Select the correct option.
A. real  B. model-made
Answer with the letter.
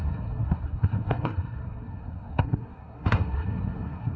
B